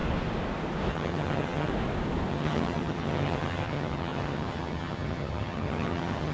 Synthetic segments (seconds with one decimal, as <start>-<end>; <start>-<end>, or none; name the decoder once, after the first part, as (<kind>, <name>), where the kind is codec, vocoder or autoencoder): 0.9-1.7 (vocoder, HiFi-GAN); 2.3-6.3